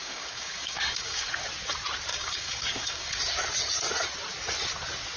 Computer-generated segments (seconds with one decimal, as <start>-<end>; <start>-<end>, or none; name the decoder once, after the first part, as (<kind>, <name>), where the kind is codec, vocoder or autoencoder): 0.0-1.3 (codec, DAC); 2.1-3.2